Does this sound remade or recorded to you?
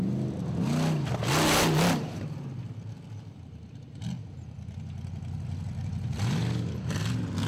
recorded